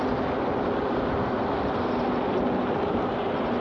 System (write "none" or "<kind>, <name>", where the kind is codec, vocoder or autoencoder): none